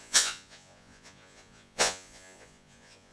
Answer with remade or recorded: remade